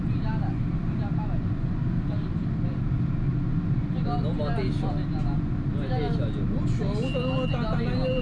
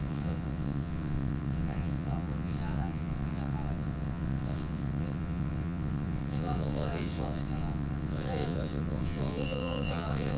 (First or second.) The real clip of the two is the first